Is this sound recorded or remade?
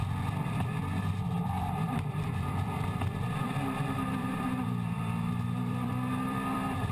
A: remade